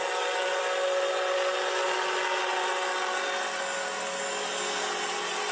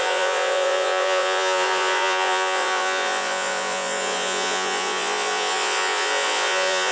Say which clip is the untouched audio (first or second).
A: first